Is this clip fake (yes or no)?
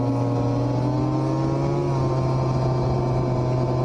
no